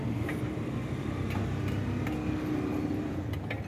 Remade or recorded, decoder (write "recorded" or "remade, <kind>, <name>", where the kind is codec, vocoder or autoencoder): recorded